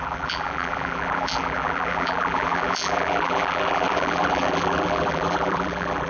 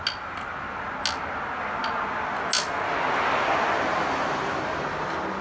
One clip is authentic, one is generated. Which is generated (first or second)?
first